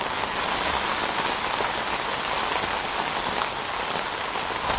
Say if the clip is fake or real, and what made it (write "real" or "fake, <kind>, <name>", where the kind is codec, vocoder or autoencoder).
real